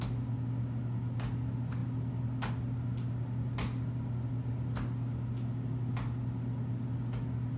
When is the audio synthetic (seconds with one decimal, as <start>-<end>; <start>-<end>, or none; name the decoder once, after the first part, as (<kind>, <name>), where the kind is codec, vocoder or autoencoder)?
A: none